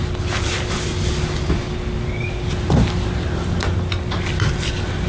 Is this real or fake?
real